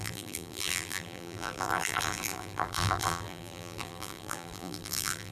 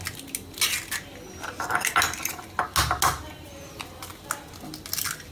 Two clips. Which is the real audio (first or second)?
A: second